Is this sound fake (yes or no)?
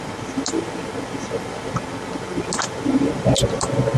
no